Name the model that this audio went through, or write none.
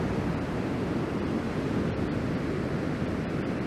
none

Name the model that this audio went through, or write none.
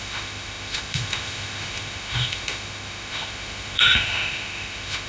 autoencoder, DAC-VAE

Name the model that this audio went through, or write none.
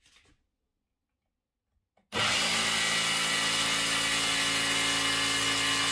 none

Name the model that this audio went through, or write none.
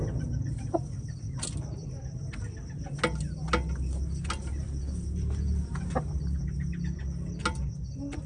none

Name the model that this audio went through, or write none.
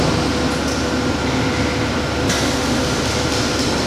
none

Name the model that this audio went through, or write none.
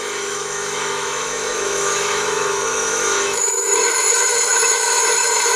autoencoder, DAC-VAE